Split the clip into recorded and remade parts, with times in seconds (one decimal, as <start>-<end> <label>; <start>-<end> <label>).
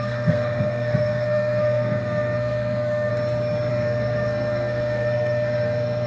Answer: 0.0-3.1 remade; 3.1-3.7 recorded; 3.7-6.1 remade